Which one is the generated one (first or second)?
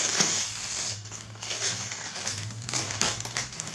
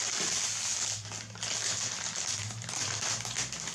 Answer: first